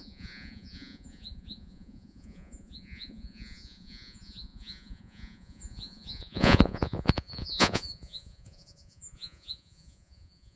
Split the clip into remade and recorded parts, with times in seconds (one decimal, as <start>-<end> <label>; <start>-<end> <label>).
0.0-10.6 remade